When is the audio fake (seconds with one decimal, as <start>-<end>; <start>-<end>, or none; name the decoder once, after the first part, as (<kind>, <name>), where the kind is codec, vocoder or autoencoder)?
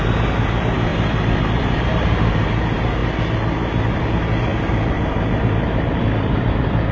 0.0-0.9 (vocoder, BigVGAN v2); 1.4-3.0; 4.0-6.9